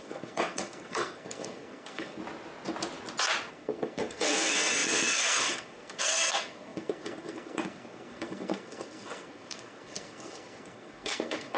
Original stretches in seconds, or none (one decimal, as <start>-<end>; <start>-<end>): 2.2-3.5